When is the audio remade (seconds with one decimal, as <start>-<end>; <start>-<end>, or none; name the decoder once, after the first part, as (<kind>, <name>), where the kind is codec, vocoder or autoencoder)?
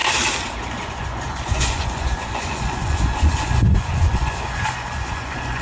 0.6-5.6 (vocoder, Vocos)